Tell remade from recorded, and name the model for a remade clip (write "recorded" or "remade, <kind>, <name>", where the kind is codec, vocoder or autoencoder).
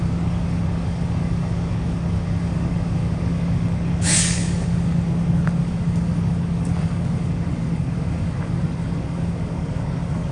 remade, codec, DAC